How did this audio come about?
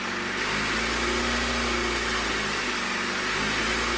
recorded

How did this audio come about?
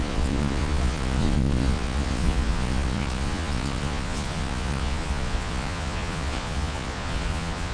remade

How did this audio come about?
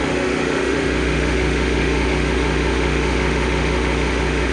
remade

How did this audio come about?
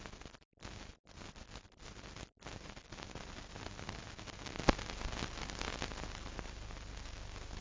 recorded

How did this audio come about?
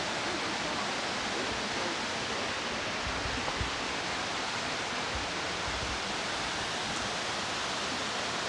recorded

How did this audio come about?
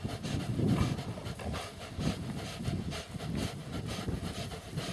recorded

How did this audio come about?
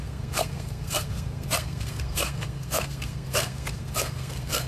remade